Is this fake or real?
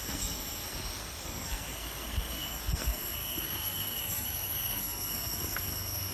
fake